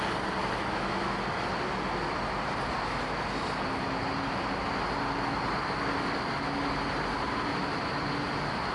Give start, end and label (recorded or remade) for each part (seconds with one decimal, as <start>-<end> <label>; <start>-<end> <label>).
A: 0.0-0.4 recorded; 0.4-1.2 remade; 1.2-8.7 recorded